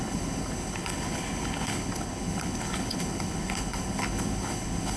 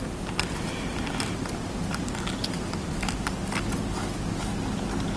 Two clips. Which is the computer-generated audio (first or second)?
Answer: first